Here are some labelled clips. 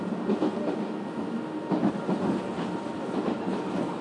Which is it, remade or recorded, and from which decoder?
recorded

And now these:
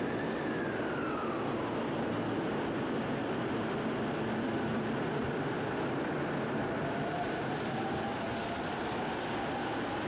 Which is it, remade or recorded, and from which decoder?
recorded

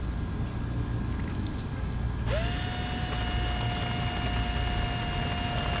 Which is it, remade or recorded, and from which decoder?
recorded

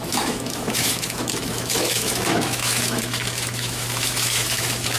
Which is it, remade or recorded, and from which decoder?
remade, autoencoder, DAC-VAE